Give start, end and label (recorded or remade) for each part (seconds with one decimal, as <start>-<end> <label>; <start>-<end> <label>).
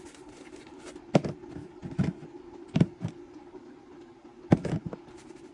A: 0.0-1.8 recorded; 1.8-3.9 remade; 3.9-5.5 recorded